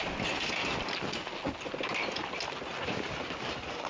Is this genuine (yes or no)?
yes